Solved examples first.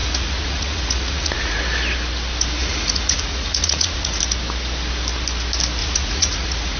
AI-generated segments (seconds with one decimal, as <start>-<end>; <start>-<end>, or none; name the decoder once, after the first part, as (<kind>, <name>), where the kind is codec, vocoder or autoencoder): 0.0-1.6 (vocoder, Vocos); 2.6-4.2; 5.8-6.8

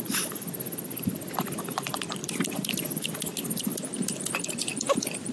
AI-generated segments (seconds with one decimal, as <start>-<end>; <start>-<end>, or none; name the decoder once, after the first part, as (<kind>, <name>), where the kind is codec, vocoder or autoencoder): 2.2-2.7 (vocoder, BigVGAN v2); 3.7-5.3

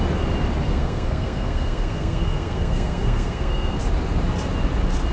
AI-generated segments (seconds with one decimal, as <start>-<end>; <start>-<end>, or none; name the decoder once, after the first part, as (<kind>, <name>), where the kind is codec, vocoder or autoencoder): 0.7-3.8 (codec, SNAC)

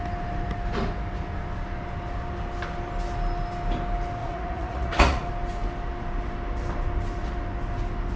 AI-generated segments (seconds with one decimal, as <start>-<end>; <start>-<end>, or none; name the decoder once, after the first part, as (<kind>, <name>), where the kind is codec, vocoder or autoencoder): 4.2-5.3 (vocoder, Vocos)

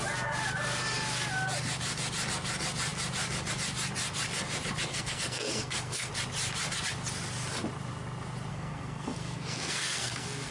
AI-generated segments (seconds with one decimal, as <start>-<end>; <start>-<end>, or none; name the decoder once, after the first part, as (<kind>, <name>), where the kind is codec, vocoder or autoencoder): 4.9-6.1 (codec, SNAC); 8.5-10.5

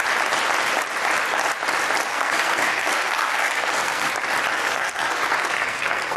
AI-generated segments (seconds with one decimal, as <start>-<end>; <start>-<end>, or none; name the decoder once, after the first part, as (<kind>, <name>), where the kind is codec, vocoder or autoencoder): 2.1-4.1 (codec, SNAC); 4.5-6.2

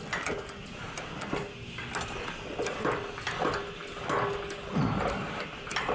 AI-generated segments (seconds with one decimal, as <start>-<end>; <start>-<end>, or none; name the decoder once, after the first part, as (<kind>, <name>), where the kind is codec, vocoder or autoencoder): none